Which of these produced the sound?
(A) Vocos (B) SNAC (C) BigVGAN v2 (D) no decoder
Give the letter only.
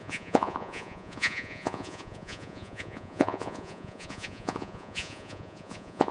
A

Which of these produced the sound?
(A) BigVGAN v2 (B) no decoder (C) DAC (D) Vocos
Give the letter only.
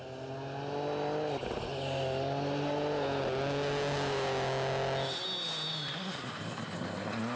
B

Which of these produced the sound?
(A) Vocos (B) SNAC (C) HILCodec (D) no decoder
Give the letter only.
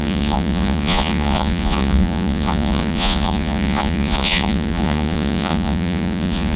A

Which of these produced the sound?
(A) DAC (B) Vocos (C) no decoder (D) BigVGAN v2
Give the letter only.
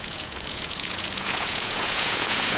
B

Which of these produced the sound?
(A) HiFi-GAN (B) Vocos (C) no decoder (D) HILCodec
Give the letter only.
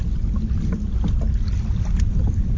C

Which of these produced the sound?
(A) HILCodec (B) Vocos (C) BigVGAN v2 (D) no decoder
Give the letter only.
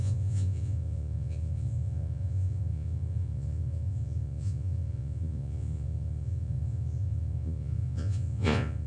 B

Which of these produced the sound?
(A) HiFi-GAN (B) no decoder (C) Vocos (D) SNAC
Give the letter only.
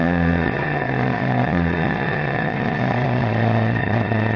C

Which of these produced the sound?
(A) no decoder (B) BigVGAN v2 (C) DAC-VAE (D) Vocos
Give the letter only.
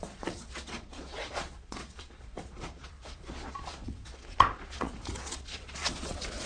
D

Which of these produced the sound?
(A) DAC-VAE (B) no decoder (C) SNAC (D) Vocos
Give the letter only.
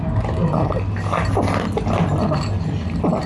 B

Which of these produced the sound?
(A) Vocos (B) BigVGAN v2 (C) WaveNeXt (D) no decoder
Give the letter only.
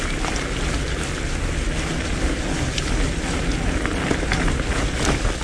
D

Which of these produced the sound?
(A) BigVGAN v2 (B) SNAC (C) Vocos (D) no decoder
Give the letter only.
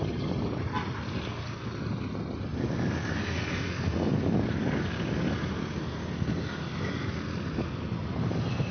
D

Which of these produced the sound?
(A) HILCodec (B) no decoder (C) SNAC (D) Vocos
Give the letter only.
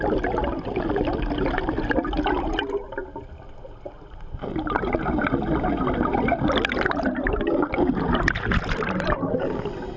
B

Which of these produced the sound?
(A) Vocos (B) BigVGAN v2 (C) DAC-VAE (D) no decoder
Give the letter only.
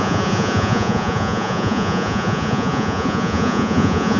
A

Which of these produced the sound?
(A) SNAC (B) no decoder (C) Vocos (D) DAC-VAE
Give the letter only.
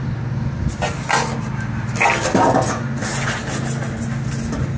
B